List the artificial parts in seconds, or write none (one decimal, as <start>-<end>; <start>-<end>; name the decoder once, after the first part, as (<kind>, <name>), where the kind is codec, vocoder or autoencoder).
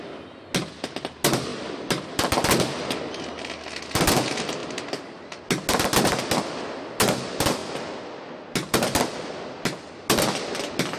none